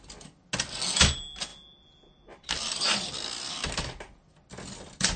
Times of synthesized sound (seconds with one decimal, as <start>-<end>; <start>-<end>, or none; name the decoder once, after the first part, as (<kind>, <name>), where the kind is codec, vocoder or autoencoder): none